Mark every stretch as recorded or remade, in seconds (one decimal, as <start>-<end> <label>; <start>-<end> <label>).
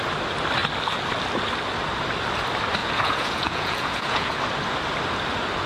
0.0-2.8 recorded; 2.8-4.4 remade; 4.4-5.7 recorded